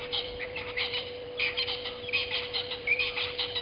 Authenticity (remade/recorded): remade